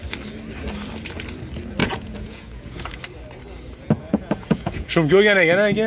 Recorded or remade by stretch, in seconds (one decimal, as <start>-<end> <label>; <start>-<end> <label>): 0.0-1.8 recorded; 1.8-3.0 remade; 3.0-4.0 recorded; 4.0-4.9 remade; 4.9-5.9 recorded